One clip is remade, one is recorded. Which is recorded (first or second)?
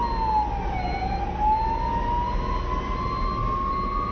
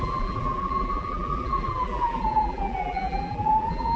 first